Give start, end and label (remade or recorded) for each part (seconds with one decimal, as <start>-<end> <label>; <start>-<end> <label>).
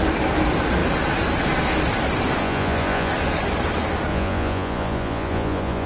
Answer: 0.0-2.4 recorded; 2.4-3.1 remade; 3.1-4.1 recorded; 4.1-5.9 remade